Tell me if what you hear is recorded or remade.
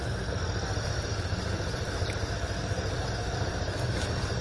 recorded